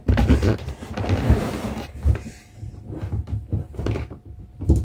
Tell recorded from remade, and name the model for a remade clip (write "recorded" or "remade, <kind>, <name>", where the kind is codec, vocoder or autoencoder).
recorded